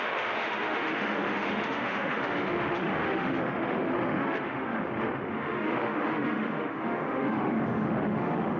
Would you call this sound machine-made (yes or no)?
yes